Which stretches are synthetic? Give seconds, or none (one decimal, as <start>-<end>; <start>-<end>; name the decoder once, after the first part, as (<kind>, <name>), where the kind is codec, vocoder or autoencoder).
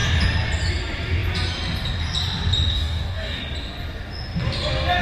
2.7-3.4 (codec, DAC)